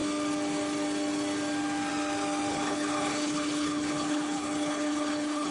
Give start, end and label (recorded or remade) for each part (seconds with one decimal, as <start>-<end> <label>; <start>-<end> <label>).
0.0-2.5 recorded; 2.5-5.5 remade